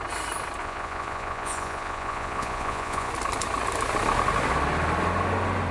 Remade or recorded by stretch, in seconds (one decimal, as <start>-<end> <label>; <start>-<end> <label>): 0.0-0.6 recorded; 0.6-3.1 remade; 3.1-5.7 recorded